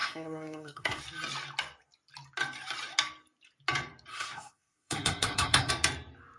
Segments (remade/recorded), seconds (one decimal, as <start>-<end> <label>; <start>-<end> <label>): 0.0-1.0 remade; 1.0-4.1 recorded; 4.1-5.7 remade; 5.7-6.4 recorded